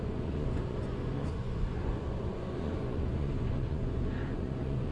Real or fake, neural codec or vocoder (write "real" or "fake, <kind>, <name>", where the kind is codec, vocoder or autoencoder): fake, vocoder, Vocos